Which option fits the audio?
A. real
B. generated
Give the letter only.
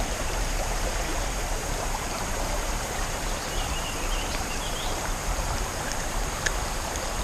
B